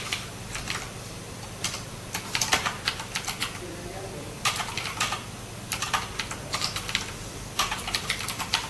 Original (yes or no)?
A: no